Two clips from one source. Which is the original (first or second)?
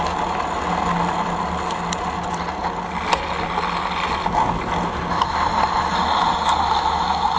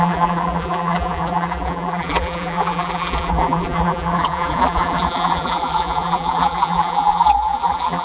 first